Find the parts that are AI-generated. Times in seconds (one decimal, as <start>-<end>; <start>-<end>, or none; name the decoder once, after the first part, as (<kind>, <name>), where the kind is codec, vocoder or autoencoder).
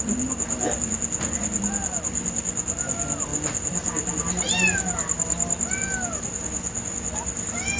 none